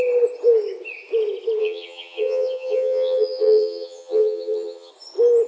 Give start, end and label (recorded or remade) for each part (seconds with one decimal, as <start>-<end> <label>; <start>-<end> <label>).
0.0-1.6 recorded; 1.6-4.9 remade; 4.9-5.5 recorded